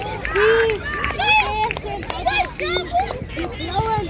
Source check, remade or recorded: recorded